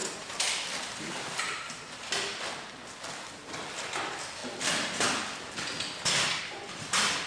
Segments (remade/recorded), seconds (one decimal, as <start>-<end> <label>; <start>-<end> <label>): 0.0-2.5 remade; 2.5-3.3 recorded; 3.3-4.4 remade; 4.4-6.4 recorded; 6.4-7.3 remade